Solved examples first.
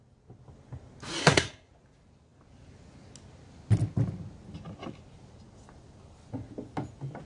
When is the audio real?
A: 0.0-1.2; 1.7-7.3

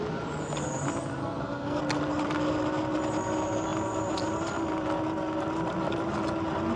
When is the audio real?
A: 0.0-1.2; 1.8-6.8

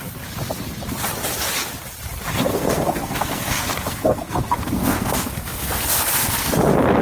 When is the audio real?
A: 0.0-2.3; 6.5-7.0

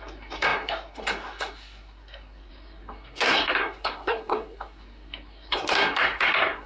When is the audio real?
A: none

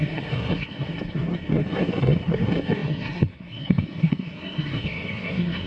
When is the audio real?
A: none

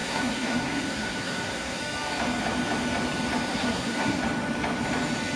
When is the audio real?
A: 1.8-3.5; 4.2-5.4

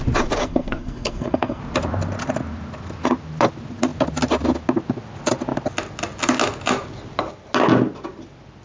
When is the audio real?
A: 0.0-0.4; 1.6-8.6

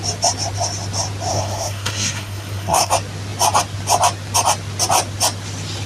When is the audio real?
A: 0.0-1.3; 2.9-5.9